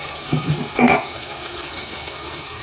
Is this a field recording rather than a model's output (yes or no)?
no